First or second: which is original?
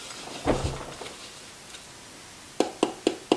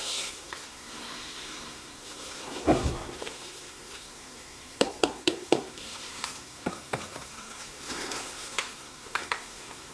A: first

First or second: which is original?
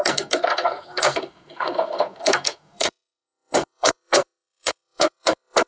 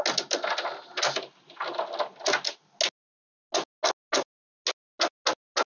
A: second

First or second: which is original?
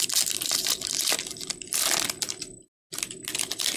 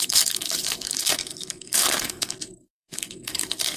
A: first